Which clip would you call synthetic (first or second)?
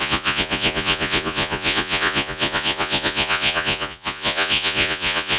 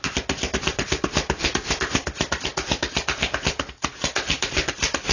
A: first